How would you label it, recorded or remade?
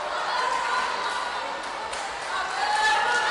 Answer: recorded